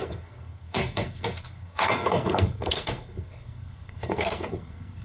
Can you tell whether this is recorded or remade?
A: remade